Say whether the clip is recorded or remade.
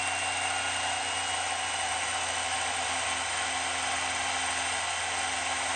recorded